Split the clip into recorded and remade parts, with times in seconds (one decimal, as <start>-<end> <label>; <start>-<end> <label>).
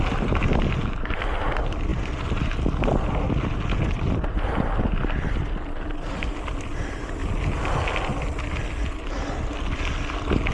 0.0-7.2 remade; 7.2-9.7 recorded; 9.7-10.5 remade